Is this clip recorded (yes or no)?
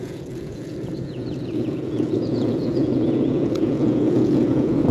no